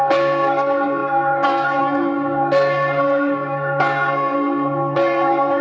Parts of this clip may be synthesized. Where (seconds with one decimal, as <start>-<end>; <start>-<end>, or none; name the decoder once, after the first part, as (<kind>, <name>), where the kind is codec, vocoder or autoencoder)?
0.0-5.6 (codec, SNAC)